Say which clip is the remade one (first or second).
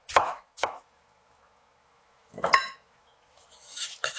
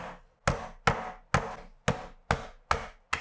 first